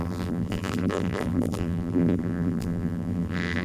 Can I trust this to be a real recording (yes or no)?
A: no